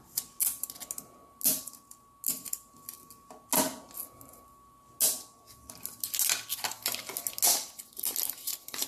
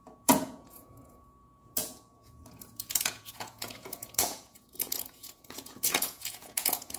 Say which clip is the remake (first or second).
second